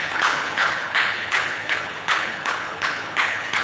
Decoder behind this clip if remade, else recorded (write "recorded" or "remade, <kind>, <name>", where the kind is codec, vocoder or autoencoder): remade, codec, HILCodec